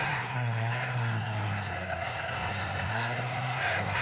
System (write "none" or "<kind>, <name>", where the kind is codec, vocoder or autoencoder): codec, SNAC